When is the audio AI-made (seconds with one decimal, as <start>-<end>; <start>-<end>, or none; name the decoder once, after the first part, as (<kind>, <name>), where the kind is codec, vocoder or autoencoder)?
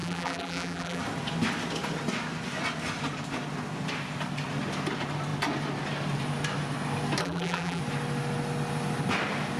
0.0-1.0 (vocoder, BigVGAN v2); 7.2-7.8